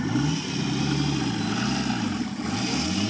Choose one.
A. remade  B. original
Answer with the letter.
B